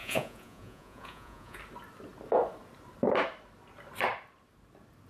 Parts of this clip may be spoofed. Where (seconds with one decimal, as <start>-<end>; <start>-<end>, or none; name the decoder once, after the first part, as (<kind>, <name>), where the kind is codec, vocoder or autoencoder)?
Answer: 0.0-1.6 (vocoder, Vocos)